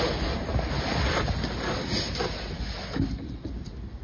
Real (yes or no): yes